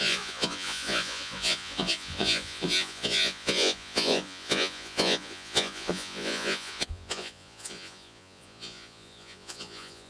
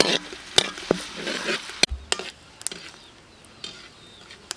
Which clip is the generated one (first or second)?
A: first